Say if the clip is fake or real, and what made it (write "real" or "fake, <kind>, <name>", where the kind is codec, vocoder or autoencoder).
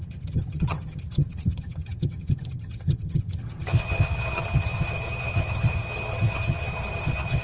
fake, vocoder, HiFi-GAN